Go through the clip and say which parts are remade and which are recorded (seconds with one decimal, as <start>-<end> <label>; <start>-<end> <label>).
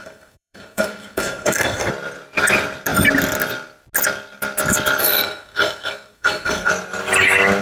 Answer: 0.0-1.9 remade; 1.9-5.0 recorded; 5.0-6.7 remade; 6.7-7.6 recorded